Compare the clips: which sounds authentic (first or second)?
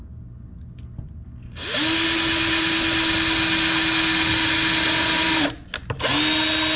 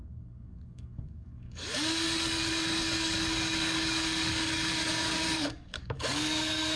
first